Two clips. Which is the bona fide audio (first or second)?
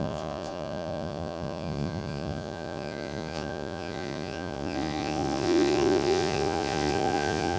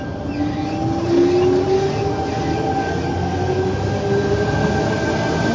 second